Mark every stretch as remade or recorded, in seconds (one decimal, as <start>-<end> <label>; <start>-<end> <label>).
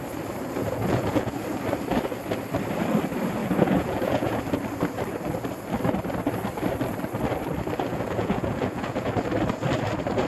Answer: 0.0-0.6 recorded; 0.6-1.3 remade; 1.3-3.4 recorded; 3.4-4.4 remade; 4.4-7.9 recorded; 7.9-9.1 remade; 9.1-10.3 recorded